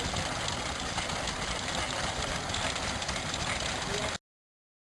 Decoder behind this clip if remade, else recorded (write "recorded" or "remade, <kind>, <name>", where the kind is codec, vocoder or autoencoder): recorded